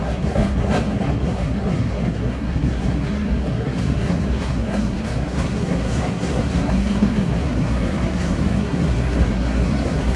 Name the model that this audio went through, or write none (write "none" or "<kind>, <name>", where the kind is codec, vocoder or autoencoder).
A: codec, SNAC